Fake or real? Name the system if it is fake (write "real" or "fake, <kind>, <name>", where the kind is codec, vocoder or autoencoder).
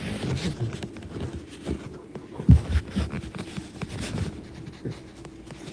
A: real